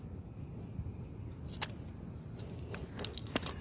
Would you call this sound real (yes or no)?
yes